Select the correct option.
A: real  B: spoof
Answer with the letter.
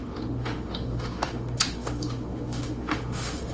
B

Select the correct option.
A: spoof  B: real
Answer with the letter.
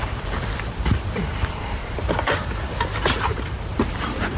A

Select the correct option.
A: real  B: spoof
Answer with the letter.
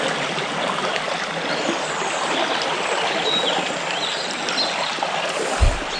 A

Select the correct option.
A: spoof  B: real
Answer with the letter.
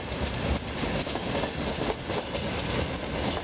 B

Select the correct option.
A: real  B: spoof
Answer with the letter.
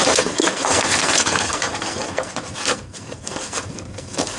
B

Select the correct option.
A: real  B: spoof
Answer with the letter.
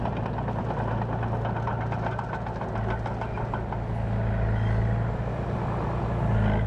A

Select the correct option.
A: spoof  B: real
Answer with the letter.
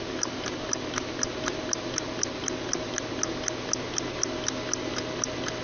B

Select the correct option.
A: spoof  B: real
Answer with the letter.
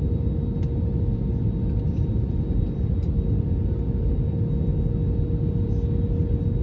B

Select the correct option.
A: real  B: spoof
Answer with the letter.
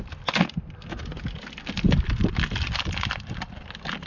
A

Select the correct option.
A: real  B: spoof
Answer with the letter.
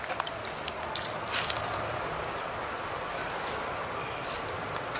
B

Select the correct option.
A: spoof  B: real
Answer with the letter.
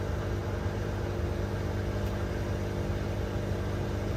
B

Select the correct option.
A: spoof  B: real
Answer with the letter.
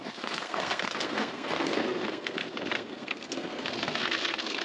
A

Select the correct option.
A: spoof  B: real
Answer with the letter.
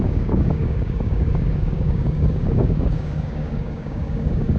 A